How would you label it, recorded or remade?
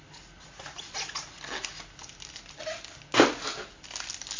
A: recorded